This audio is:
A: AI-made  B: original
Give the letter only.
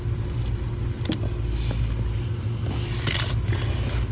B